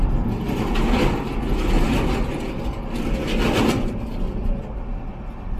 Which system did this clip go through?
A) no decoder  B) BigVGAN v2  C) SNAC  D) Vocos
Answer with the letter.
A